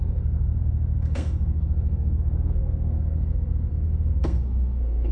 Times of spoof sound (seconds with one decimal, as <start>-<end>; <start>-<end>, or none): 0.0-5.1

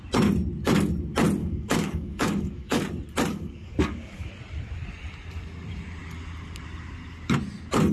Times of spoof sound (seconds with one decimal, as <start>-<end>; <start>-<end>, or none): 1.4-2.8; 3.3-4.3

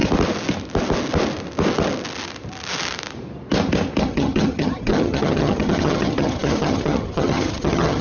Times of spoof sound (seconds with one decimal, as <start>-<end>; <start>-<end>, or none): 4.0-8.0

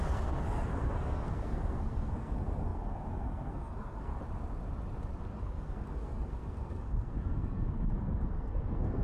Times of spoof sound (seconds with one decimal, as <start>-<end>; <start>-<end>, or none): 0.0-4.1; 5.4-9.0

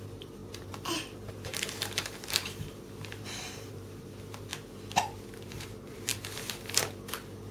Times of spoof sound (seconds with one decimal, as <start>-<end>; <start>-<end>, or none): 0.0-4.5; 5.5-7.5

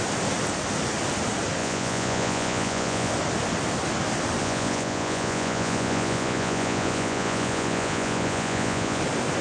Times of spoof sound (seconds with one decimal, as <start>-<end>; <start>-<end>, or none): 1.6-3.1; 4.4-9.0

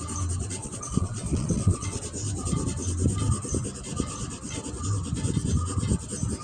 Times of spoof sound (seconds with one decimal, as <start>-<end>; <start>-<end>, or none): 0.4-2.0

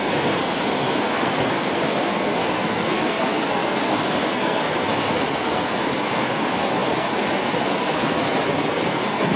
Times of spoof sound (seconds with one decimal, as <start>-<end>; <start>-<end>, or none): 0.0-9.4